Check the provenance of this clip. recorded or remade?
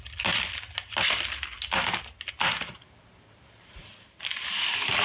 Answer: recorded